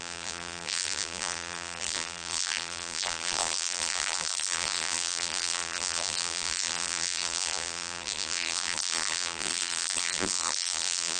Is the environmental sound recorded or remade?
remade